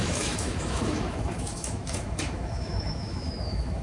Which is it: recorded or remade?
remade